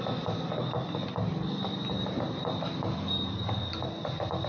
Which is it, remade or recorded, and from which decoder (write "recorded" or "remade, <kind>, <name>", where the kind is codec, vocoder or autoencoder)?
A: recorded